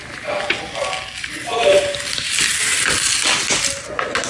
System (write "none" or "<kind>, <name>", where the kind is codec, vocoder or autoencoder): none